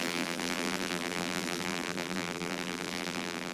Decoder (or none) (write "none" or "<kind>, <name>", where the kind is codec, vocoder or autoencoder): vocoder, BigVGAN v2